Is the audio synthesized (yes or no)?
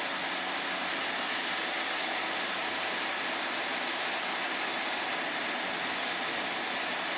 no